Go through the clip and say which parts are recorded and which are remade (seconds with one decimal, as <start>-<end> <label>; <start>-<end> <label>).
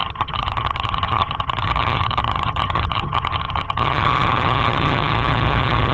0.0-5.9 remade